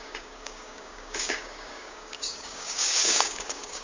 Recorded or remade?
remade